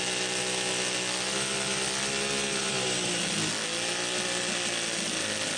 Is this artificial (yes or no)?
no